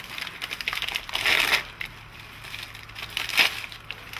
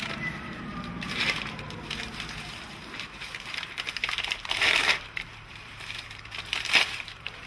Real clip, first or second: first